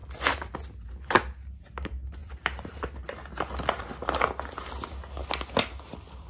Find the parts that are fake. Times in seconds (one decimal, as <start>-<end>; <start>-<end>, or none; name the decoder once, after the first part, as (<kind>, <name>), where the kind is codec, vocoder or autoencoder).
2.2-2.9 (vocoder, BigVGAN v2)